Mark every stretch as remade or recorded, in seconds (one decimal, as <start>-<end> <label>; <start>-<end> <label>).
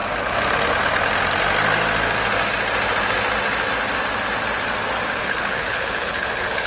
0.0-5.2 recorded; 5.2-6.7 remade